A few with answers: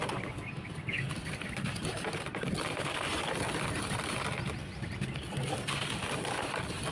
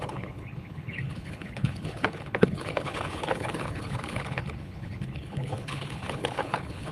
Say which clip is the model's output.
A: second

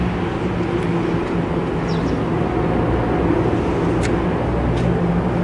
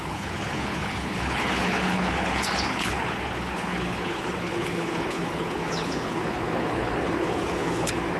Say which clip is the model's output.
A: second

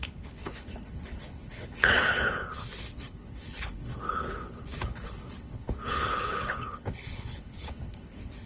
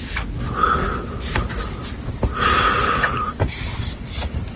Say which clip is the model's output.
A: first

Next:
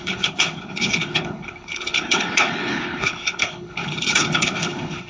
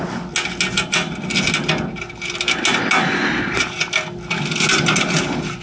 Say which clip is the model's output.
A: first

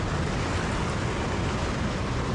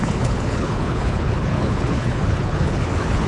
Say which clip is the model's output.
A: second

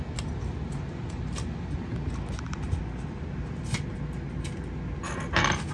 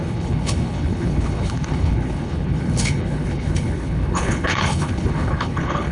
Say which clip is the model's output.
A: second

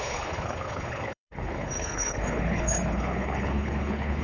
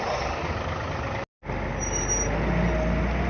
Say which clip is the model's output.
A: first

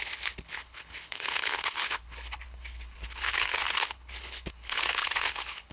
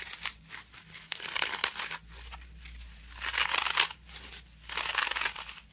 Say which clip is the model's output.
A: first